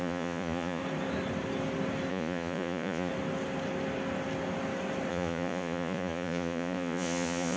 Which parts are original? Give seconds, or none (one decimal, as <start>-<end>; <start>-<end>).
0.8-2.1; 3.1-5.1